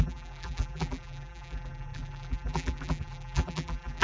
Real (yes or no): no